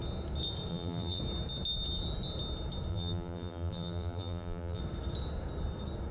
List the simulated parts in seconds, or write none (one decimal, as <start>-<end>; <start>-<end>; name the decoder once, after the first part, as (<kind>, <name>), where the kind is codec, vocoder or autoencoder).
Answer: 0.7-1.2 (vocoder, BigVGAN v2); 2.9-4.8

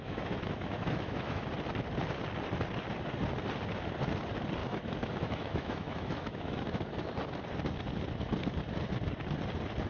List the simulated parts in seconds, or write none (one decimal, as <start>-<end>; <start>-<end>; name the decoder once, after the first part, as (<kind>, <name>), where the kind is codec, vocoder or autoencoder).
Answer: 0.0-1.5 (autoencoder, DAC-VAE); 4.6-6.8

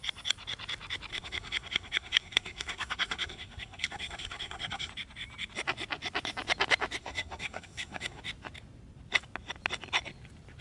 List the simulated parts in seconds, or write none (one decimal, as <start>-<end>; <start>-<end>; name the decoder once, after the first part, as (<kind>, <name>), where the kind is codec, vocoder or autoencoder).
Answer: 1.1-4.9 (codec, SNAC); 7.0-8.2